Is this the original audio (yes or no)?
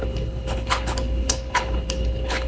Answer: no